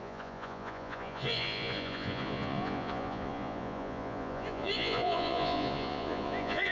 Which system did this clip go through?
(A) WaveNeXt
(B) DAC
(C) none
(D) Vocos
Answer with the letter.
D